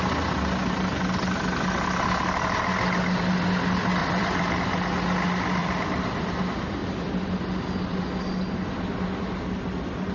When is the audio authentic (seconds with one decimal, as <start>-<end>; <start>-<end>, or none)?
0.0-4.0; 4.6-5.6; 6.3-10.1